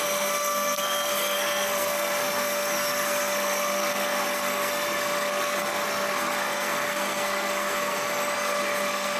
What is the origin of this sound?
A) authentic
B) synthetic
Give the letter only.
B